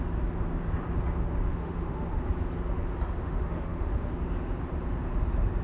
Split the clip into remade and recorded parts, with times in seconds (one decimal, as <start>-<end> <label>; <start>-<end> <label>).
0.0-1.5 recorded; 1.5-2.2 remade; 2.2-3.2 recorded; 3.2-4.1 remade; 4.1-5.6 recorded